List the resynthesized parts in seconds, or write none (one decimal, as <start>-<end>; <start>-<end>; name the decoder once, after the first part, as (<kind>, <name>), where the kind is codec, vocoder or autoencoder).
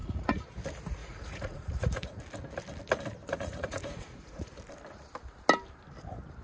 0.0-0.5 (vocoder, Vocos); 1.0-2.2; 3.2-4.5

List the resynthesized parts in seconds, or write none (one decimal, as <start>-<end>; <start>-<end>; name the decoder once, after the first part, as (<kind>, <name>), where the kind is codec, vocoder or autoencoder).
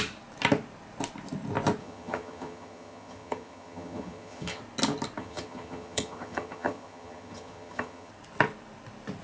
1.8-4.6 (vocoder, HiFi-GAN); 5.2-8.1